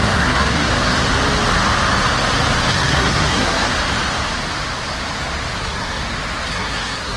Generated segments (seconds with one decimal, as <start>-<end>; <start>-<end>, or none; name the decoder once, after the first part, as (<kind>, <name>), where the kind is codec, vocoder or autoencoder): 0.0-0.7 (codec, SNAC); 2.7-3.7; 5.6-6.0; 6.5-7.2